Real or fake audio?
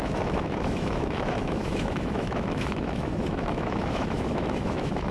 fake